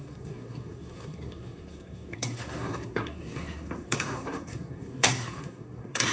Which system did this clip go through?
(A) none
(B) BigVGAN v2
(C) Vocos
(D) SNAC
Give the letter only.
D